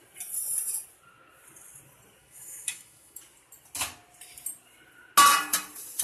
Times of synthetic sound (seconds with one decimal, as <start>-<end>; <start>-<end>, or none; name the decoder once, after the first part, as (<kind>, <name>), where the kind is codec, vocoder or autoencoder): 2.2-3.2 (autoencoder, DAC-VAE)